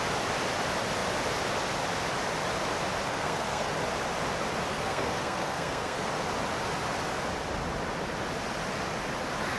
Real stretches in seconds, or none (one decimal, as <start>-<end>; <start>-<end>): 0.0-3.1; 3.7-4.7; 6.1-9.6